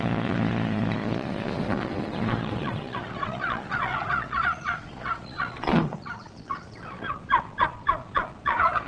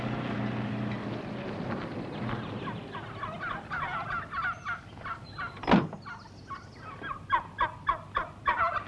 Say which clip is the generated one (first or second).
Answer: first